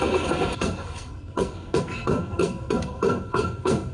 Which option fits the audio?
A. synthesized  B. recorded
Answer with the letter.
A